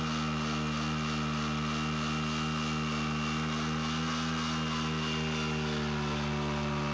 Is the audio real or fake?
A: real